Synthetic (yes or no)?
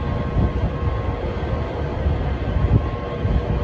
no